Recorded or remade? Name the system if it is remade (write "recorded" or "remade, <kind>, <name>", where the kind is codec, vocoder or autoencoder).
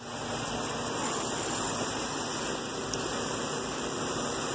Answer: recorded